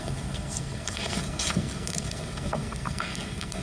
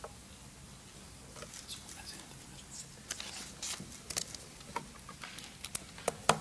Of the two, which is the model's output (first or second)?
first